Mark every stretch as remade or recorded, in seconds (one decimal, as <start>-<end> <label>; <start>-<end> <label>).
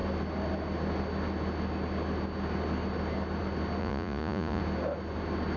0.0-3.8 recorded; 3.8-4.6 remade; 4.6-5.6 recorded